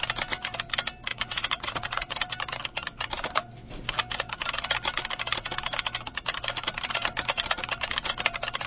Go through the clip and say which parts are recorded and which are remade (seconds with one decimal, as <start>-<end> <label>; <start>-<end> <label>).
0.0-1.1 recorded; 1.1-2.2 remade; 2.2-8.7 recorded